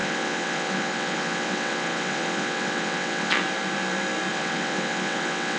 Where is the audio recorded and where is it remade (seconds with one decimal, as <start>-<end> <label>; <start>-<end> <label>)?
0.0-3.4 remade; 3.4-4.3 recorded; 4.3-5.6 remade